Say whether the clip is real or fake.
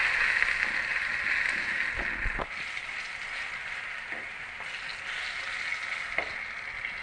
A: real